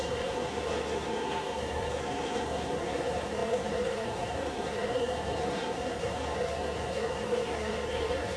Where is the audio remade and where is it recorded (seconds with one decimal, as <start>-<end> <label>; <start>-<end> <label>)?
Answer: 0.0-8.4 remade